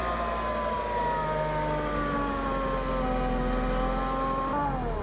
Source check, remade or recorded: recorded